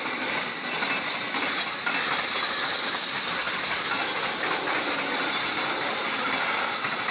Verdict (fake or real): real